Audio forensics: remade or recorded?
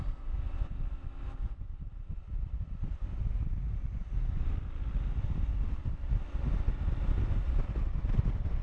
recorded